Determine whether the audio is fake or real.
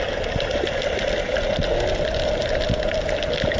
real